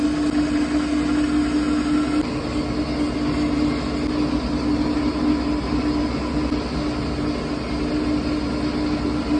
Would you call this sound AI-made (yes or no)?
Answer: no